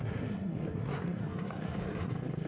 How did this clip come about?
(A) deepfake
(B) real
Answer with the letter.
A